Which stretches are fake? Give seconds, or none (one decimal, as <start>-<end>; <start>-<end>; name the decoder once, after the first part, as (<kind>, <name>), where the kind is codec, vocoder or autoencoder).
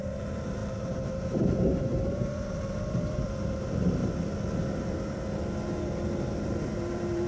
0.0-4.0 (vocoder, BigVGAN v2); 6.4-7.3